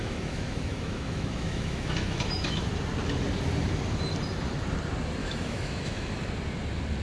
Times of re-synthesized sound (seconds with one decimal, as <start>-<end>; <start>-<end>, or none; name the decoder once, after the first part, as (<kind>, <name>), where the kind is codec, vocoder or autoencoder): 0.0-2.7 (autoencoder, DAC-VAE); 5.2-6.1